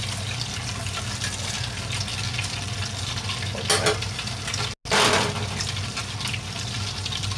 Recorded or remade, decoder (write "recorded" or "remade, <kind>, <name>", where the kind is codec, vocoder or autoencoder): recorded